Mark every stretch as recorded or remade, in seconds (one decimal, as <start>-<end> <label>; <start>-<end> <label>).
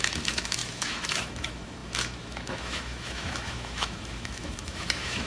0.0-5.3 remade